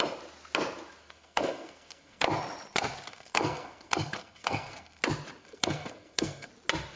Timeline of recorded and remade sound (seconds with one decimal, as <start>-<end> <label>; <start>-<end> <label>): 0.0-1.0 recorded; 1.0-2.2 remade; 2.2-3.1 recorded; 3.1-5.0 remade; 5.0-5.4 recorded; 5.4-6.5 remade; 6.5-7.0 recorded